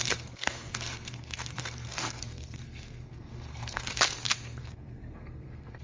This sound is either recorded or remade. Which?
remade